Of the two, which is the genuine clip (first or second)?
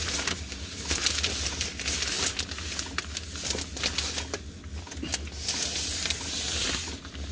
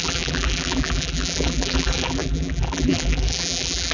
first